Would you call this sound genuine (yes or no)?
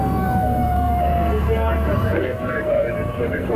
no